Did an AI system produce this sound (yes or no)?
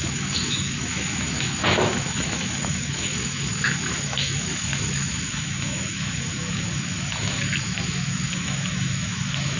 yes